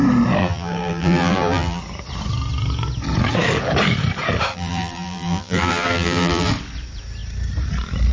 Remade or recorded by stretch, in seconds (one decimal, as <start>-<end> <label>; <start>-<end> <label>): 0.0-0.4 recorded; 0.4-1.8 remade; 1.8-4.5 recorded; 4.5-6.5 remade; 6.5-8.1 recorded